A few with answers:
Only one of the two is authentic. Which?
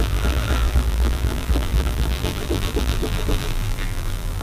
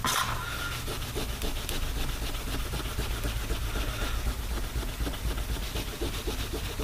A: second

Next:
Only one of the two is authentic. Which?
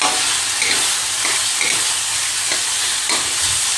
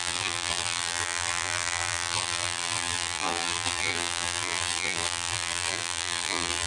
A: first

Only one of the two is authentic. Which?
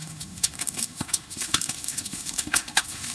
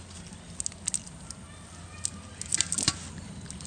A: second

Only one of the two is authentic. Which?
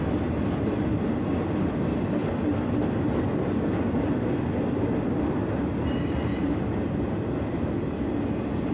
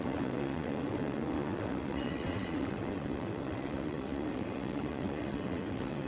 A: first